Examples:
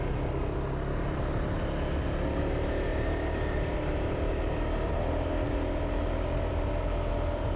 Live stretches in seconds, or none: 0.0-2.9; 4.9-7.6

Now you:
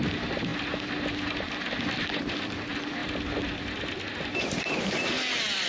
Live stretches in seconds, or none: 0.5-2.1; 3.0-5.1